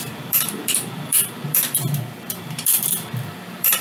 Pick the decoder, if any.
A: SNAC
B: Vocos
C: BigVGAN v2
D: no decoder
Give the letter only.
C